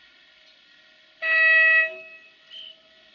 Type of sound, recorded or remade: recorded